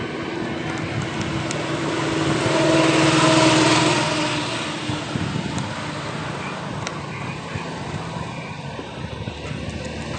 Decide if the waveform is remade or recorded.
recorded